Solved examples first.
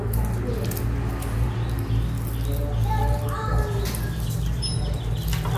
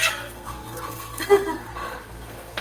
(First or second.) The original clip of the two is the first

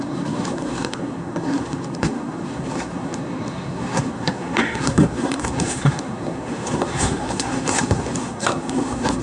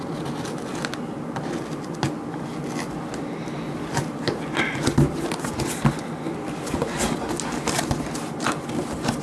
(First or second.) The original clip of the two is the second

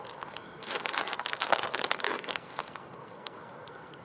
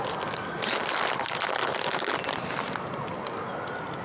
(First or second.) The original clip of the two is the second